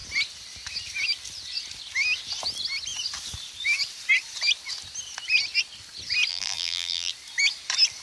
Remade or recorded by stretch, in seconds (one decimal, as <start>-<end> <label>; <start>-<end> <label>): 0.0-6.3 recorded; 6.3-7.1 remade; 7.1-8.0 recorded